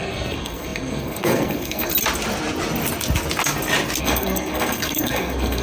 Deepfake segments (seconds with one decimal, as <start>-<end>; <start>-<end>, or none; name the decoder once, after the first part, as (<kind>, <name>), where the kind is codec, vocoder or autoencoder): 0.0-1.9 (codec, SNAC); 4.0-5.6